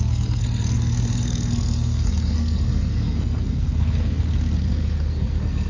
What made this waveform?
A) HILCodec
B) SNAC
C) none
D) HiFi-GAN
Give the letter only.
B